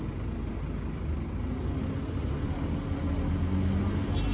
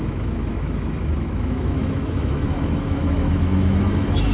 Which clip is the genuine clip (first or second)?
first